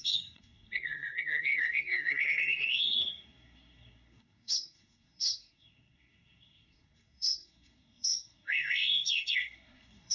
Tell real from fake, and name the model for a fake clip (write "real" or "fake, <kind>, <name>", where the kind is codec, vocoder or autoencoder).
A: fake, codec, SNAC